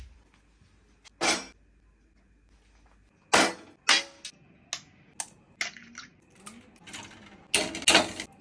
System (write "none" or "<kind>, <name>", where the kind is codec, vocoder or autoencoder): none